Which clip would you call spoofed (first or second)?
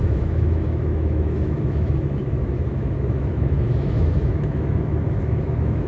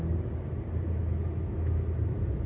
first